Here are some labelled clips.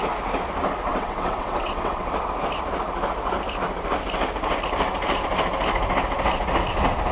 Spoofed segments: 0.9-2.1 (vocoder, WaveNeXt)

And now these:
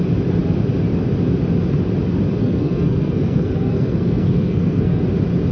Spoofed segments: 2.4-5.0 (codec, SNAC)

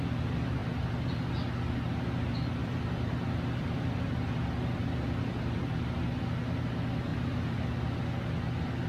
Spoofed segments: 0.6-1.1 (vocoder, BigVGAN v2); 2.6-6.0; 7.1-7.6

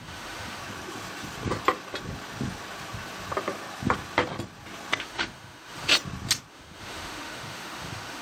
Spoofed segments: 0.0-0.6 (autoencoder, DAC-VAE); 5.0-5.9; 6.5-8.2

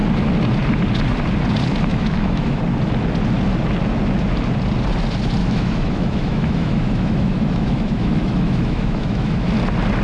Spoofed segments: 1.9-2.6 (autoencoder, DAC-VAE); 5.4-9.5

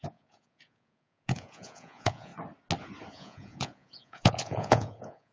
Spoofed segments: 0.0-2.3 (vocoder, Vocos); 3.1-5.3